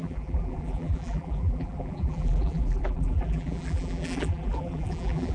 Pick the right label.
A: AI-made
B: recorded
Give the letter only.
A